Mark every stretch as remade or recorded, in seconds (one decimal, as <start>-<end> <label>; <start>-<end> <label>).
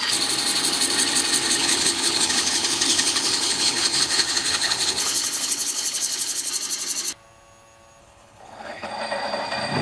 0.0-1.6 recorded; 1.6-6.5 remade; 6.5-8.0 recorded; 8.0-8.9 remade; 8.9-9.8 recorded